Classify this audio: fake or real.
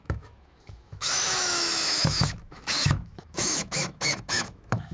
fake